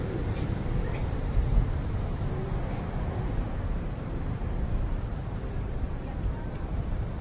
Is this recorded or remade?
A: remade